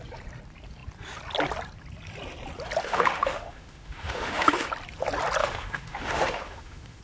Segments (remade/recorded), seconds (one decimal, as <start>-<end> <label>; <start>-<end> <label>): 0.0-2.8 recorded; 2.8-4.7 remade; 4.7-5.4 recorded; 5.4-7.0 remade